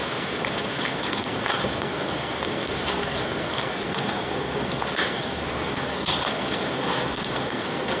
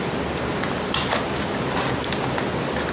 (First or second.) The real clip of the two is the second